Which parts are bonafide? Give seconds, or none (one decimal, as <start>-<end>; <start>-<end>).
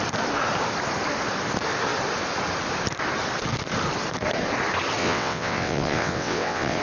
0.0-5.0